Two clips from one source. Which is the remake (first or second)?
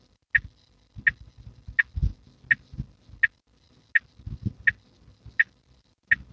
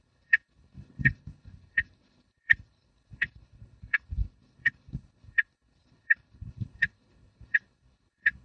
second